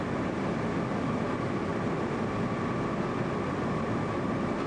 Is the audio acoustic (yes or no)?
yes